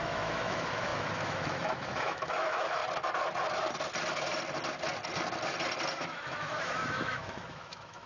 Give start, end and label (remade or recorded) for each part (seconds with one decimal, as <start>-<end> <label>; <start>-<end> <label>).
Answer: 0.0-2.8 remade; 2.8-6.0 recorded; 6.0-8.1 remade